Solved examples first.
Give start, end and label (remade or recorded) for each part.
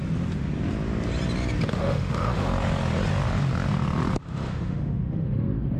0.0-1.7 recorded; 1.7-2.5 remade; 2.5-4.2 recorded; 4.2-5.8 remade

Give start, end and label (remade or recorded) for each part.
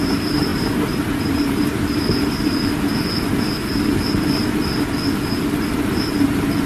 0.0-2.9 remade; 2.9-5.4 recorded; 5.4-6.7 remade